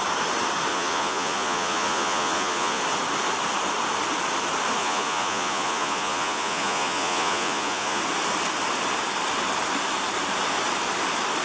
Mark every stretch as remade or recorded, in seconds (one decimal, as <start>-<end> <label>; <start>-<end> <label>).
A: 0.0-0.7 recorded; 0.7-2.8 remade; 2.8-4.8 recorded; 4.8-8.0 remade; 8.0-11.4 recorded